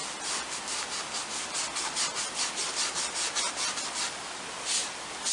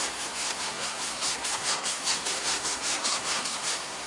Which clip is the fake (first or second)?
second